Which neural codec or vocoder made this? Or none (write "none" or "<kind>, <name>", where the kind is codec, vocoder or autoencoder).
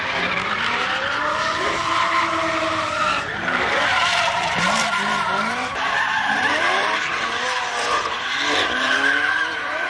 vocoder, BigVGAN v2